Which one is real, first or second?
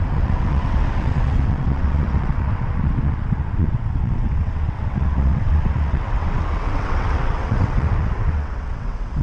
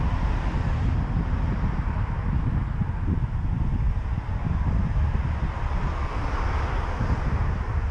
second